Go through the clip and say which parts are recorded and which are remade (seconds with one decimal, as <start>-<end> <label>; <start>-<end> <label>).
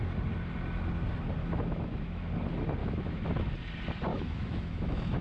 0.0-1.4 recorded; 1.4-2.2 remade; 2.2-2.8 recorded; 2.8-3.3 remade; 3.3-4.1 recorded; 4.1-5.2 remade